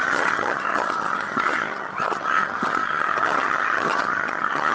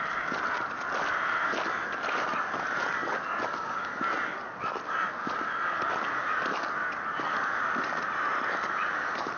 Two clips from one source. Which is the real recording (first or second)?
second